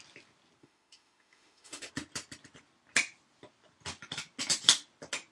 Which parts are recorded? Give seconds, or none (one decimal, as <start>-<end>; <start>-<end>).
0.0-0.6; 1.9-5.3